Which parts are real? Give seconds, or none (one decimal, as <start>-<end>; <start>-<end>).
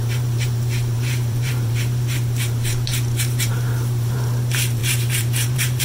none